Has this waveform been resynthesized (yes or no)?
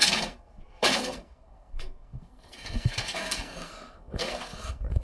yes